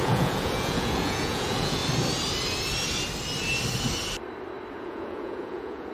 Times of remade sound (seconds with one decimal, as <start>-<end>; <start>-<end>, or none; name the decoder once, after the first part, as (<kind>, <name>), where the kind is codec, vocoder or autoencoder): 0.0-1.8 (vocoder, Vocos); 4.7-5.9